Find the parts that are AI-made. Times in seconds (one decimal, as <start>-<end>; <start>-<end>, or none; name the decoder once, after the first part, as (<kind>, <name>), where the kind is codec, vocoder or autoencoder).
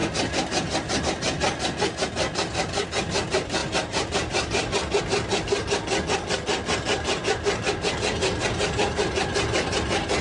none